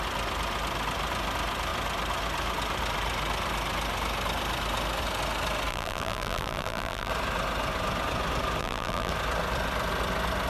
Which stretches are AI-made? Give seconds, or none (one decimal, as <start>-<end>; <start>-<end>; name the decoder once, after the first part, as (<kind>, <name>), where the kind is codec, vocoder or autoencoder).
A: 5.7-7.1 (vocoder, BigVGAN v2); 8.6-9.1